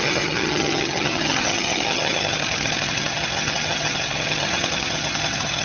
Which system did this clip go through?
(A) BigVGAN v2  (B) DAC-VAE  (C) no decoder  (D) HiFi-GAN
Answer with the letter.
D